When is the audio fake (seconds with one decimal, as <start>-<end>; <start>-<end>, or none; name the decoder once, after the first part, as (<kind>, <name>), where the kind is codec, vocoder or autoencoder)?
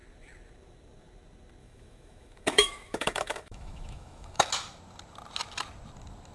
1.6-4.5 (autoencoder, DAC-VAE)